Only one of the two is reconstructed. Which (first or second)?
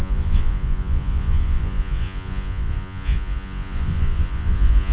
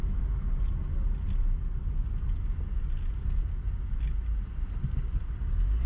first